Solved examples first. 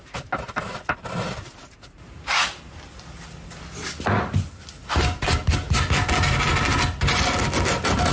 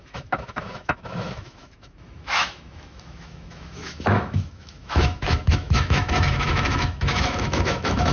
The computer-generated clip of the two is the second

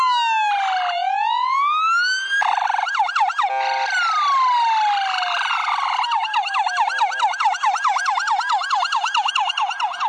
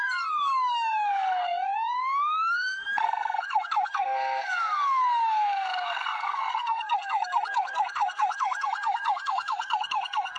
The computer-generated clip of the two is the second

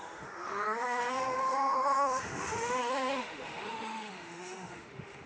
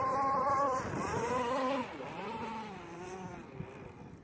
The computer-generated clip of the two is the first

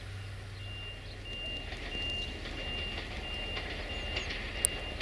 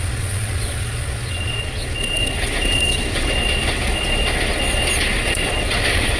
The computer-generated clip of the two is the second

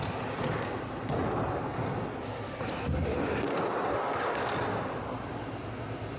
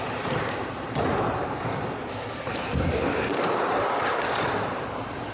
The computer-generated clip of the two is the second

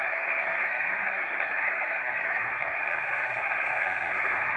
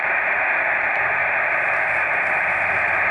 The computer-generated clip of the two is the first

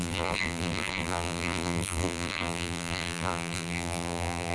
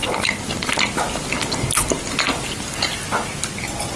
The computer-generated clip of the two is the first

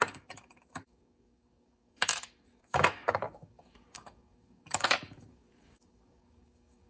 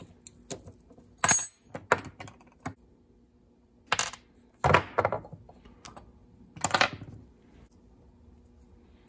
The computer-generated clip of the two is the first